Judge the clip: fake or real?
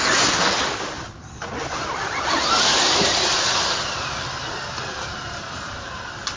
fake